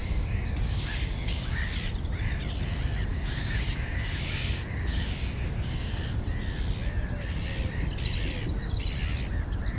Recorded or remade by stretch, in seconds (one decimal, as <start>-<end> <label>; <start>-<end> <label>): 0.0-1.6 remade; 1.6-3.1 recorded; 3.1-5.9 remade; 5.9-9.8 recorded